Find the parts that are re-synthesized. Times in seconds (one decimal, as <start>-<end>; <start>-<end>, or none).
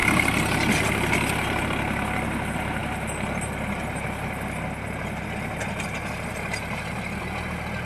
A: none